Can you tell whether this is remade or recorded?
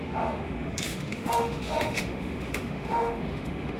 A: remade